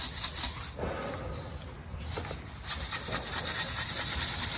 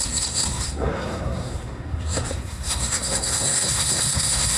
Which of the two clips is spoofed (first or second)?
second